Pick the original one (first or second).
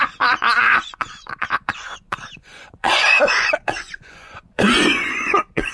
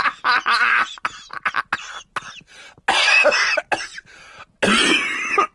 second